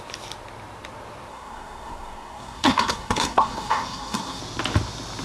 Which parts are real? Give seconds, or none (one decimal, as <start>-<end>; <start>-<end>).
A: 0.0-1.3; 4.4-5.2